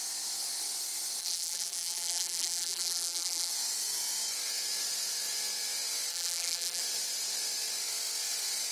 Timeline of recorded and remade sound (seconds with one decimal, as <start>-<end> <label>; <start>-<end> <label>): 0.0-1.2 recorded; 1.2-3.5 remade; 3.5-6.1 recorded; 6.1-6.8 remade; 6.8-8.7 recorded